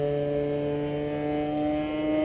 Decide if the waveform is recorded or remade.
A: recorded